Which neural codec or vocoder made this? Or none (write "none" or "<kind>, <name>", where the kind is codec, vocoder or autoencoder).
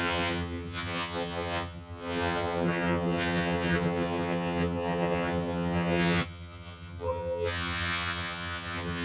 vocoder, HiFi-GAN